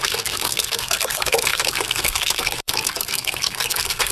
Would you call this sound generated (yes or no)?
yes